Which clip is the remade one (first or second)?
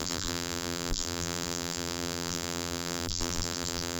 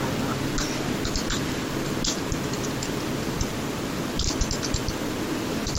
first